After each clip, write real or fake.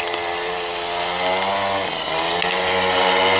real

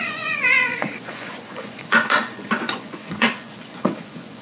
fake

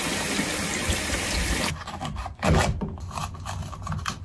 real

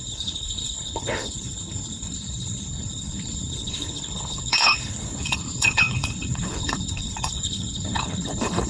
fake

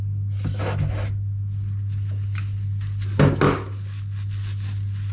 real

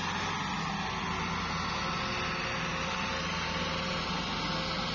real